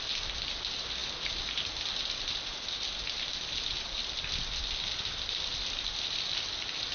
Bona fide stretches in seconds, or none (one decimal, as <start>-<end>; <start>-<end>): 0.0-6.9